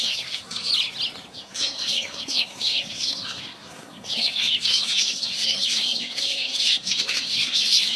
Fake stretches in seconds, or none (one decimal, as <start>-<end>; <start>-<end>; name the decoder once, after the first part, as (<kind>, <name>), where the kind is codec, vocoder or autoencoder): 0.0-0.7 (codec, SNAC); 1.3-8.0